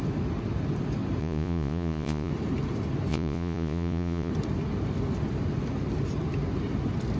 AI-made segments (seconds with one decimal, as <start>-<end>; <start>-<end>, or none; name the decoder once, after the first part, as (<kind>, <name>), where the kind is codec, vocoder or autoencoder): 1.2-2.3 (vocoder, Vocos); 3.1-4.3